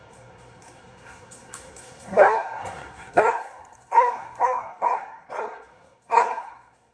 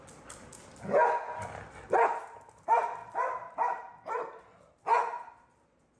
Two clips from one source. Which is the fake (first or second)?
first